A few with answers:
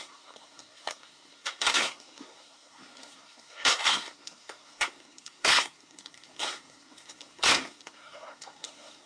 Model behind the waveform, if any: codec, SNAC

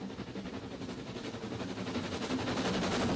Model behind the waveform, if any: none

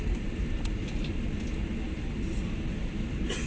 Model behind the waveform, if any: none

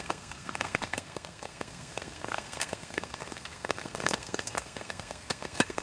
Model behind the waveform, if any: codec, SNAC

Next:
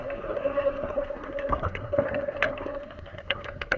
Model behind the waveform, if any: codec, SNAC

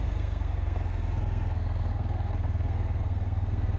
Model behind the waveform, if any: codec, SNAC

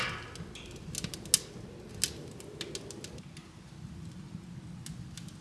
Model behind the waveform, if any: none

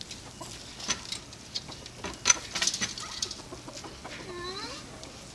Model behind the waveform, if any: none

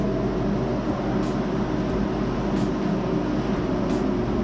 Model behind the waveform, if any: none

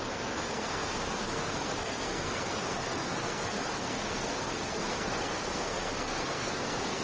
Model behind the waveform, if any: codec, SNAC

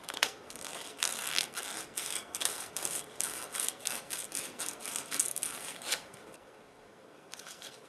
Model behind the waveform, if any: codec, SNAC